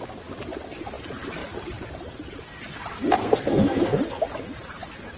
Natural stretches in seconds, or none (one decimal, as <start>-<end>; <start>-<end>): 0.0-3.2; 4.0-5.2